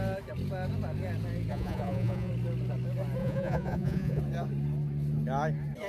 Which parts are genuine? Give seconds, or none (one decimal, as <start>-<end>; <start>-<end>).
0.0-1.5; 2.3-3.2; 4.2-5.9